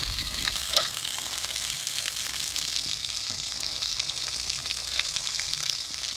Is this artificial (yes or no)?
yes